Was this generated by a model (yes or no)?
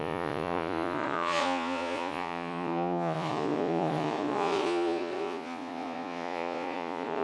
yes